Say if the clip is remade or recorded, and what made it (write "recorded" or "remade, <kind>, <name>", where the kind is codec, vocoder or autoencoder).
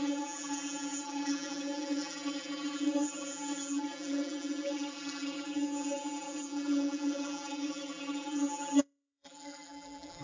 remade, vocoder, BigVGAN v2